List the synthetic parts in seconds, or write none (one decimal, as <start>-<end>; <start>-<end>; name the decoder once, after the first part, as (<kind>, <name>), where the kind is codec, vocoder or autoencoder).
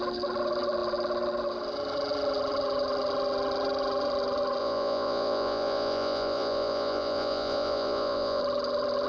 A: 4.6-8.4 (vocoder, Vocos)